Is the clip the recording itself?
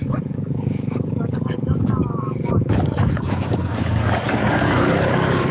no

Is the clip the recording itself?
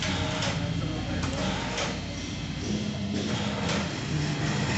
yes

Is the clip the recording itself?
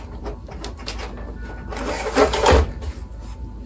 yes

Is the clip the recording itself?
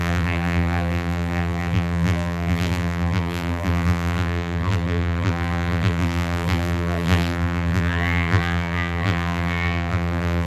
no